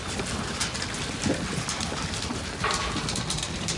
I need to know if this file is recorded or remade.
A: recorded